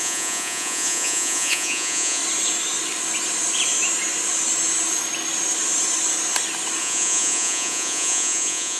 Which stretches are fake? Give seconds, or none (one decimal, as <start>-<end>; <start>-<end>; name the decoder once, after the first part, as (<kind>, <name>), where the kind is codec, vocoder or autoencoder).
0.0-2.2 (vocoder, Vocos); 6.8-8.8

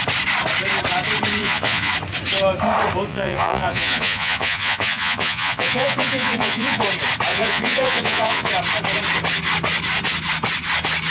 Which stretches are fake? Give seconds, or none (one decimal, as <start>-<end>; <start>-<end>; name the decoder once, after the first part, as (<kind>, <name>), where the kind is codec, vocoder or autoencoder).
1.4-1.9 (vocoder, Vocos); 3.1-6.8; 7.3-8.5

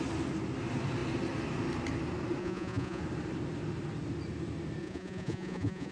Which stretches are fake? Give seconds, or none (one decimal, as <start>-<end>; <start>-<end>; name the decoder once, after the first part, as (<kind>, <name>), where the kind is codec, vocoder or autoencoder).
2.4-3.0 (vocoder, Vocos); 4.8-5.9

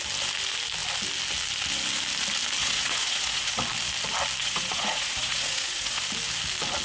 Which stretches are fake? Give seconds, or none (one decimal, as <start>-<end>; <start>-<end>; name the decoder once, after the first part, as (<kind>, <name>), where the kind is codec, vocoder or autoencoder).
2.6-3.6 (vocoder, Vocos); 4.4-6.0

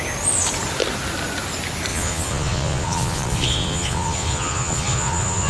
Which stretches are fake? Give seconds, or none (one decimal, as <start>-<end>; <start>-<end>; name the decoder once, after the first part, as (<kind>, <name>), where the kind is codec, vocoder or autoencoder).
1.9-5.5 (vocoder, Vocos)

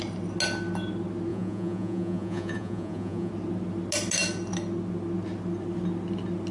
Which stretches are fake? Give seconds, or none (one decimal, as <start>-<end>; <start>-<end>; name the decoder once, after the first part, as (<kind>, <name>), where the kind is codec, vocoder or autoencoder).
1.3-3.3 (vocoder, Vocos)

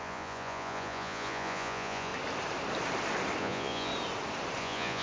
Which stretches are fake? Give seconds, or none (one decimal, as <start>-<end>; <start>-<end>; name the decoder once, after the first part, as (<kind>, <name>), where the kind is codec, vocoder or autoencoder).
0.0-2.1 (vocoder, Vocos); 3.4-3.9; 4.6-5.0

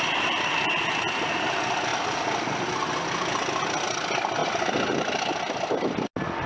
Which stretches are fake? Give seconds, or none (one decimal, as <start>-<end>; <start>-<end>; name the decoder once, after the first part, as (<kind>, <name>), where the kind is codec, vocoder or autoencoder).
none